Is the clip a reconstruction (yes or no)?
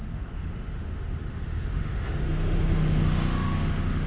yes